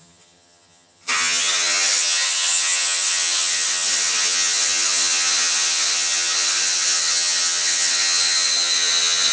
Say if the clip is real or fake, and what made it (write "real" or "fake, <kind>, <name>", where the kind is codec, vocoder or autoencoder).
fake, vocoder, HiFi-GAN